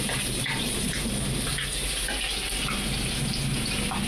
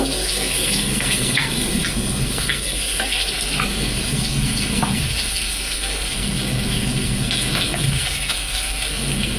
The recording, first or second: first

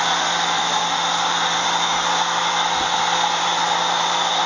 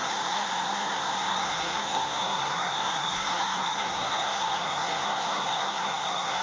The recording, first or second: first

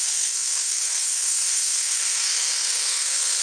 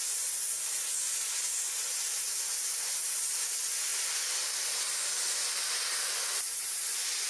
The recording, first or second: second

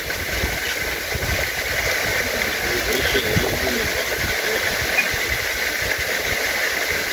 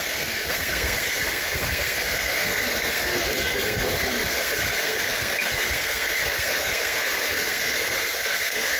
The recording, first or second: first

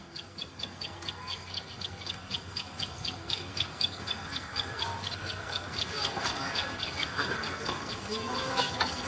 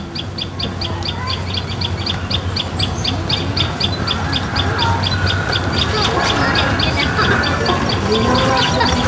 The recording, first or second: second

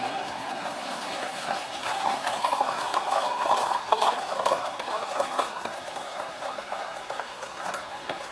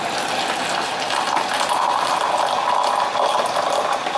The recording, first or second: second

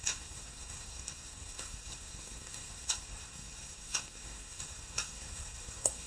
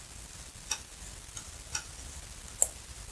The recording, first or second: second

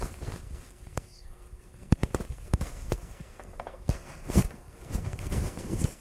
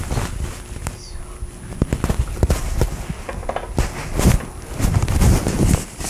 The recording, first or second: second